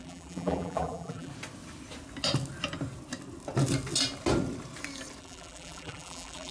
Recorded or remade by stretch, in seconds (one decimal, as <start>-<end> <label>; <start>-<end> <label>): 0.0-1.3 remade; 1.3-5.2 recorded; 5.2-6.5 remade